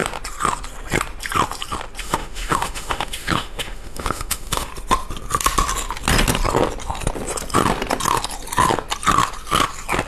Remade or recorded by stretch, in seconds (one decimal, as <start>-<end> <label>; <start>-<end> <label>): 0.0-2.0 recorded; 2.0-4.7 remade; 4.7-10.1 recorded